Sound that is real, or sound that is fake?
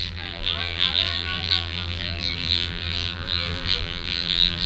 fake